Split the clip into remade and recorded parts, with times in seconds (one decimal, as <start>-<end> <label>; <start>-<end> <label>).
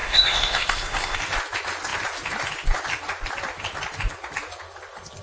0.0-1.2 remade; 1.2-5.2 recorded